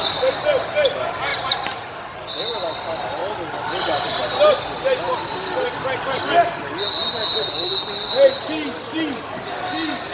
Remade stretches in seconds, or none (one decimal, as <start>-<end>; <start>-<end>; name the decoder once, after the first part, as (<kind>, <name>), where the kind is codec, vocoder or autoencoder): 1.3-2.0 (vocoder, BigVGAN v2)

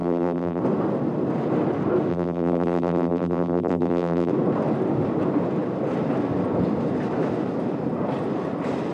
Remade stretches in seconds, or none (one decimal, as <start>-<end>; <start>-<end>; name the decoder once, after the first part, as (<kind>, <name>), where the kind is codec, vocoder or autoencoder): 0.0-0.6 (vocoder, BigVGAN v2); 2.1-4.3

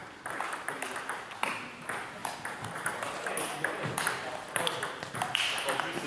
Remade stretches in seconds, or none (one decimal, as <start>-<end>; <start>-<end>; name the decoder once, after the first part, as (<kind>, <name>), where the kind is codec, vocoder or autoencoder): 2.2-6.1 (vocoder, BigVGAN v2)

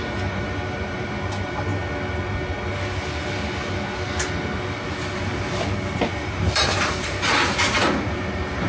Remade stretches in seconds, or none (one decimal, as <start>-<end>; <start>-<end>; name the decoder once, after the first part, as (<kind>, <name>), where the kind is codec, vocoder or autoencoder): 0.0-1.7 (vocoder, BigVGAN v2); 6.1-8.7

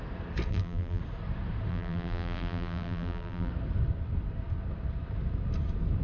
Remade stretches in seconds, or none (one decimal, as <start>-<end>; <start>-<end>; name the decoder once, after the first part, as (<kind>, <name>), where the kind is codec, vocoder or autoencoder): 0.5-1.0 (vocoder, BigVGAN v2); 1.7-3.5

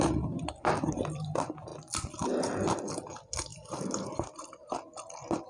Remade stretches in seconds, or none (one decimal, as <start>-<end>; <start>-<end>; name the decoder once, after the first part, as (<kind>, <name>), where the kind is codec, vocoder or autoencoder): 3.5-4.3 (vocoder, BigVGAN v2)

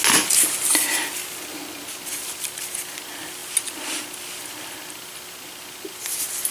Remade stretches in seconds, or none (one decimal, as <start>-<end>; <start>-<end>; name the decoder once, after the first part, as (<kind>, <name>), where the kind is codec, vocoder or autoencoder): none

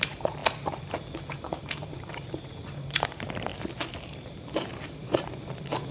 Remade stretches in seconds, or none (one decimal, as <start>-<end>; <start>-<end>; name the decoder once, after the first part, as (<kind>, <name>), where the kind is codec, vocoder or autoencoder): 0.0-0.4 (vocoder, BigVGAN v2); 1.3-3.5; 4.1-5.9